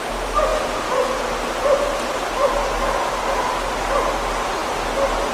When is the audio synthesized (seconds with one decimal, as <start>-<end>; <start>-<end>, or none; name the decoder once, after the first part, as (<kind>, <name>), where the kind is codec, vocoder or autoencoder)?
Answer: none

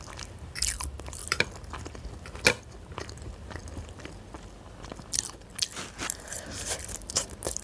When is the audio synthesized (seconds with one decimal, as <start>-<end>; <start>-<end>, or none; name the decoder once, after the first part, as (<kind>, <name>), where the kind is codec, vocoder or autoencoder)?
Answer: 0.0-7.6 (vocoder, BigVGAN v2)

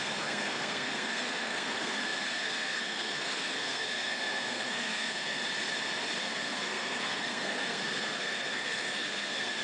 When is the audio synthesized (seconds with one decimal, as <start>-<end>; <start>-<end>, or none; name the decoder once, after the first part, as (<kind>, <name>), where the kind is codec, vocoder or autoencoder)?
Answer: 0.0-5.4 (codec, SNAC); 6.2-9.6

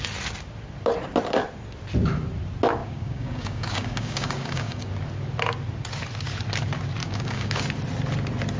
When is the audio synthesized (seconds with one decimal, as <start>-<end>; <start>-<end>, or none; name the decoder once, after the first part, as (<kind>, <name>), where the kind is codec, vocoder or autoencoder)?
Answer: 2.8-4.9 (codec, DAC); 7.0-7.6